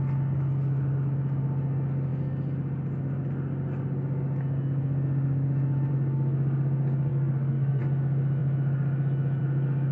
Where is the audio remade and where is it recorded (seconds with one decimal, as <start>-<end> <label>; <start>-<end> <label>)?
0.0-7.1 recorded; 7.1-7.8 remade; 7.8-9.9 recorded